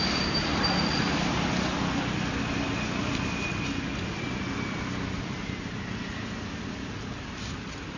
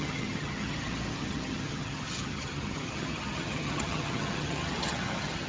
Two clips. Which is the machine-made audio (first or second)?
second